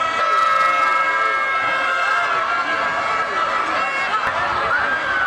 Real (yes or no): yes